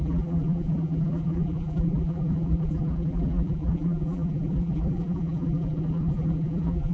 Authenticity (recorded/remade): remade